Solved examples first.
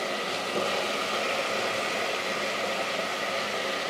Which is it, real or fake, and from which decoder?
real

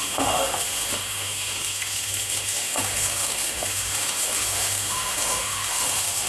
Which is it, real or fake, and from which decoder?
fake, autoencoder, DAC-VAE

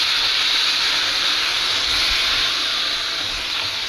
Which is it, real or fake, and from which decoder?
real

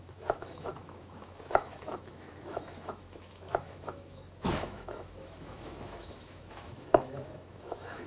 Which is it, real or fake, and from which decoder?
fake, autoencoder, DAC-VAE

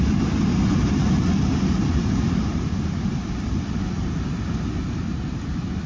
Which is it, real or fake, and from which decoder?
real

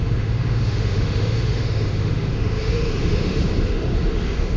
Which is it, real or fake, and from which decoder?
fake, autoencoder, DAC-VAE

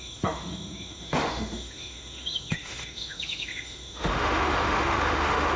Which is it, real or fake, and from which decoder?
fake, autoencoder, DAC-VAE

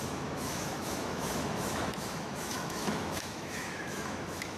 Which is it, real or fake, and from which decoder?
fake, autoencoder, DAC-VAE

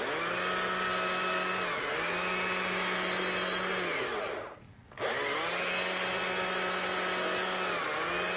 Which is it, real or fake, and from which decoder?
real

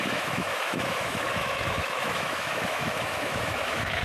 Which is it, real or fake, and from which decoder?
fake, autoencoder, DAC-VAE